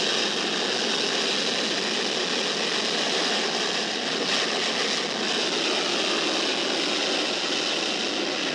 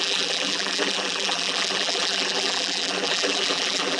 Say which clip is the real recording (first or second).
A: first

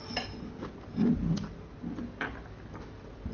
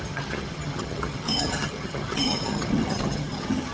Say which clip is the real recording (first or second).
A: first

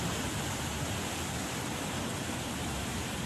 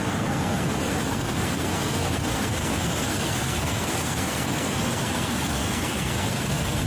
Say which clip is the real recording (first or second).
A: first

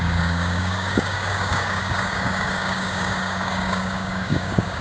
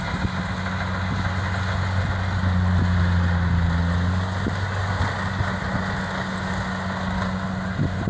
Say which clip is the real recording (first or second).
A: second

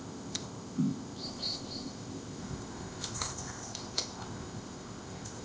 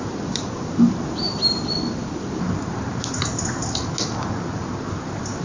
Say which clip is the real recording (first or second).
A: second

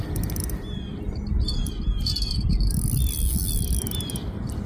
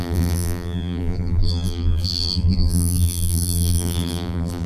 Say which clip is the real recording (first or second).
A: first